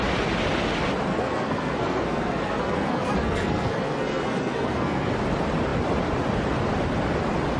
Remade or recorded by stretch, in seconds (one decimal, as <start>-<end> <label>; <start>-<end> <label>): 0.0-1.1 recorded; 1.1-5.1 remade; 5.1-7.6 recorded